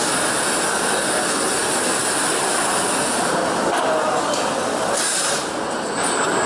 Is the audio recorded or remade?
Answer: recorded